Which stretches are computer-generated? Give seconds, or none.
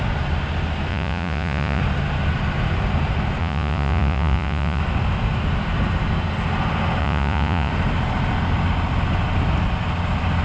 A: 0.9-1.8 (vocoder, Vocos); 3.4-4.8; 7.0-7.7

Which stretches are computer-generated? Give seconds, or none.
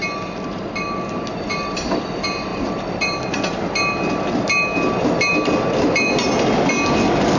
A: none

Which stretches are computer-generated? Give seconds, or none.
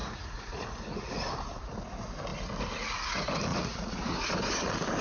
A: 0.0-1.2 (vocoder, Vocos); 3.5-4.3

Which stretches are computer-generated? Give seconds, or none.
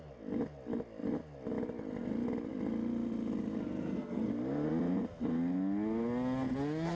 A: 3.8-4.3 (codec, SNAC)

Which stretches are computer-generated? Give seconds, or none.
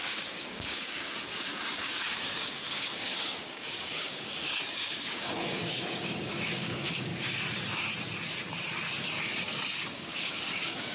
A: 0.0-7.1 (codec, DAC); 9.8-10.9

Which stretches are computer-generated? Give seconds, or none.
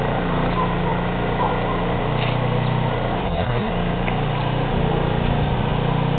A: 3.2-3.7 (codec, SNAC)